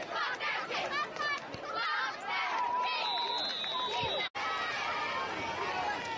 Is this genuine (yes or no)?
yes